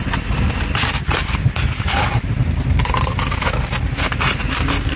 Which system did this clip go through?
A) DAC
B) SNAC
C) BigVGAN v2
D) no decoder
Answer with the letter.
C